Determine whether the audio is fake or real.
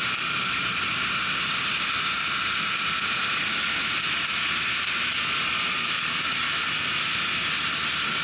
real